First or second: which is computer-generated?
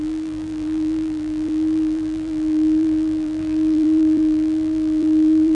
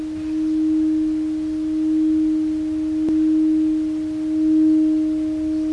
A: first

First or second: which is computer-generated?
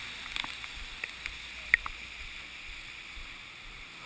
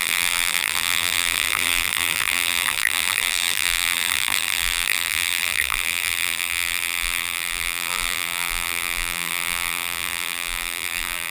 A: second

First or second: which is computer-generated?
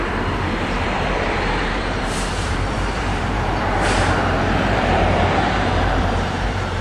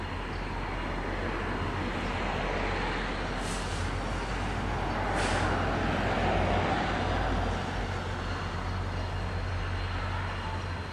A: first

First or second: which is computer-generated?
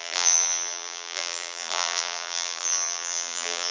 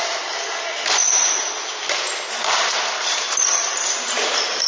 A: first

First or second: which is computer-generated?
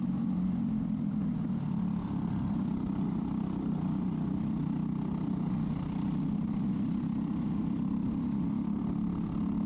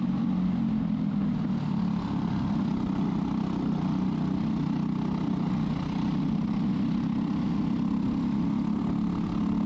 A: first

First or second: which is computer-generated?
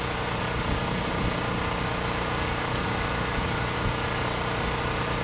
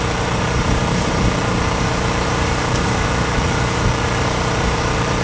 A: second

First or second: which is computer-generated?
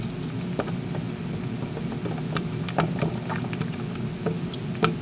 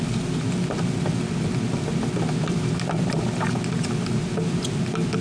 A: second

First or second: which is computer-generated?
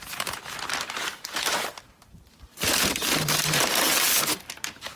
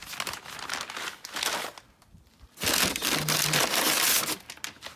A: first